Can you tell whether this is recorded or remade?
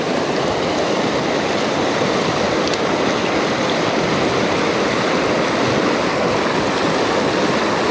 recorded